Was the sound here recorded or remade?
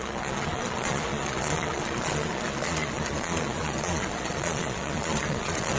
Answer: remade